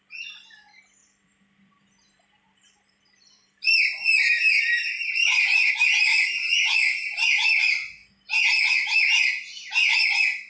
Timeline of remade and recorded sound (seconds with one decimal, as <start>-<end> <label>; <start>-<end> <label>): 0.0-1.0 recorded; 1.0-5.7 remade; 5.7-10.5 recorded